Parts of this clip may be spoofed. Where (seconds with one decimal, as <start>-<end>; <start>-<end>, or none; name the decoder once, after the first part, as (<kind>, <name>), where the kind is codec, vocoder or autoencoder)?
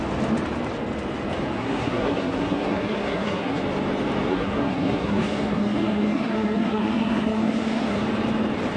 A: 1.6-3.6 (codec, SNAC); 4.3-8.0